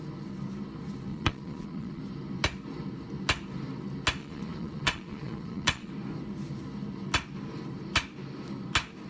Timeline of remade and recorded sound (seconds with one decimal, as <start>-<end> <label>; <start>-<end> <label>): 0.0-1.1 recorded; 1.1-2.0 remade; 2.0-4.2 recorded; 4.2-5.9 remade; 5.9-9.1 recorded